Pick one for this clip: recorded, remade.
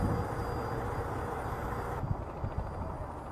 recorded